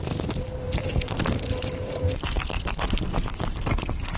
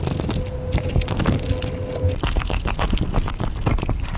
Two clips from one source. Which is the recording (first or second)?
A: second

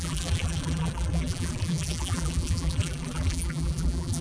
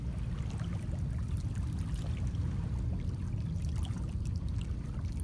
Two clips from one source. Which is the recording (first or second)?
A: second